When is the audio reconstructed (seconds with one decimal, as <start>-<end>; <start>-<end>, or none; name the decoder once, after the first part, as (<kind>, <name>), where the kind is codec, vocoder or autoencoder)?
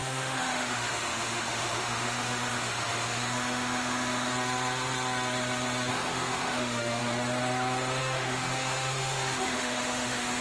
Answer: 0.0-4.3 (autoencoder, DAC-VAE); 5.9-7.0; 8.0-10.4